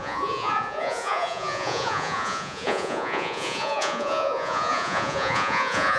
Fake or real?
fake